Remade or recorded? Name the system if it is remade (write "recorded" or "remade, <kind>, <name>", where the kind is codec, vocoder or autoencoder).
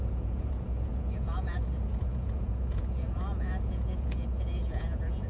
remade, vocoder, Vocos